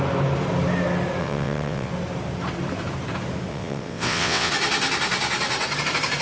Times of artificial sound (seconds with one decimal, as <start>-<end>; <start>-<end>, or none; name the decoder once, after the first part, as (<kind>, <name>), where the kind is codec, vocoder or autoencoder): 1.2-1.9 (vocoder, WaveNeXt); 3.5-4.5